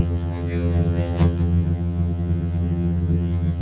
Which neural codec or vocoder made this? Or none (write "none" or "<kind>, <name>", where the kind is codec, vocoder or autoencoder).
vocoder, HiFi-GAN